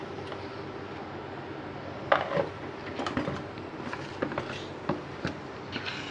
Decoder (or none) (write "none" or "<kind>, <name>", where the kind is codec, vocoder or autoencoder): none